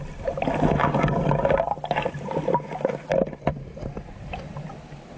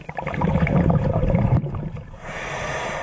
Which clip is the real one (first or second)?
first